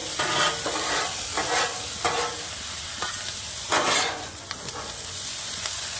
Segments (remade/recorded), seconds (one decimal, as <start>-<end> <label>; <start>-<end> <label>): 0.0-3.6 recorded; 3.6-6.0 remade